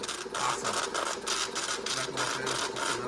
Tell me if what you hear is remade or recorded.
recorded